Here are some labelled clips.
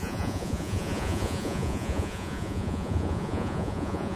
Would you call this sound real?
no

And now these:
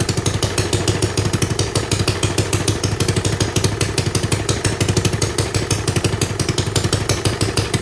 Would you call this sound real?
yes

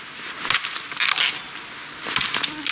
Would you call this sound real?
yes